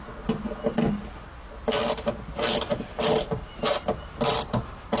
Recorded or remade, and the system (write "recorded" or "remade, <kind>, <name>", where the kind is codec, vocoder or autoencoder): recorded